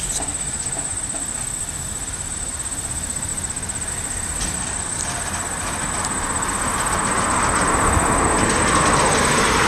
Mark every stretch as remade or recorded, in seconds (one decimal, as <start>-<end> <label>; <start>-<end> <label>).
0.0-9.7 recorded